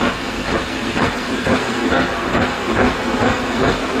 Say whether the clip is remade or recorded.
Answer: remade